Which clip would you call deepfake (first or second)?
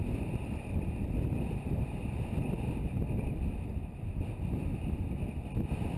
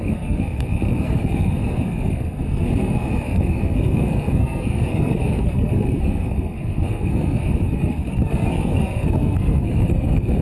second